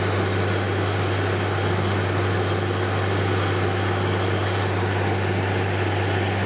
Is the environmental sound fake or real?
real